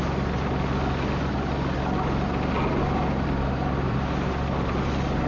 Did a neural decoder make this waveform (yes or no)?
no